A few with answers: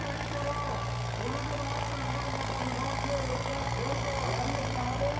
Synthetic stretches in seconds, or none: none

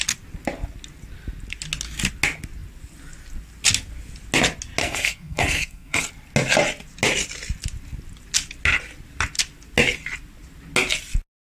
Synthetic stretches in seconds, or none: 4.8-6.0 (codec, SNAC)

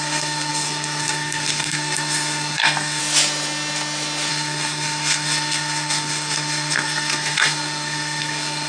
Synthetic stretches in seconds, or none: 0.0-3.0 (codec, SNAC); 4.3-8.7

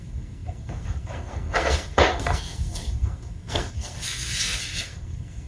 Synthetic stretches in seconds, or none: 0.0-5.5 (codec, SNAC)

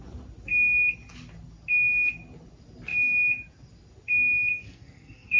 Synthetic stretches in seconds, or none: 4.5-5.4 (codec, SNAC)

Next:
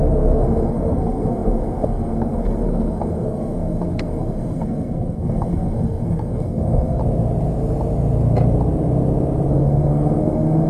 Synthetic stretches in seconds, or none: 0.0-7.0 (codec, SNAC); 9.5-10.7

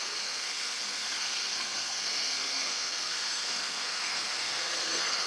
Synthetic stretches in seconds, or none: 0.0-5.3 (codec, SNAC)